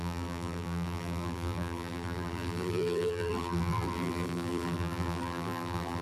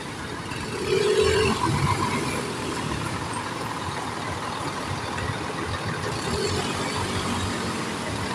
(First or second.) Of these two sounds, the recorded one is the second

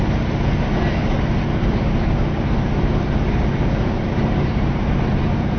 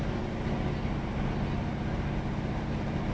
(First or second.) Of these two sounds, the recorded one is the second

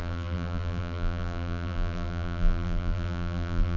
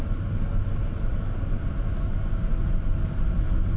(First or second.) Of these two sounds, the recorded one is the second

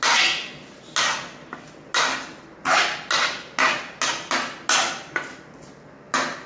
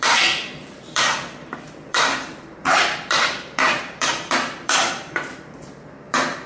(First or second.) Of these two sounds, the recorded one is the first